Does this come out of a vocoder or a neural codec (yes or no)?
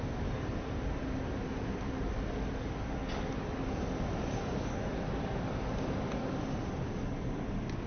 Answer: no